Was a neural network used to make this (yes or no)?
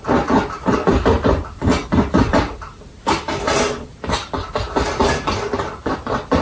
no